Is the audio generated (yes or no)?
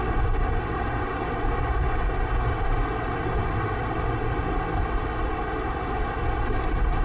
no